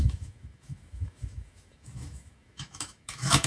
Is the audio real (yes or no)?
no